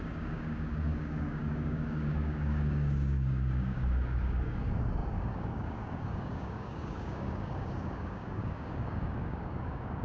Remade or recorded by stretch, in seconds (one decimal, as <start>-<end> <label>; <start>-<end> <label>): 0.0-10.0 remade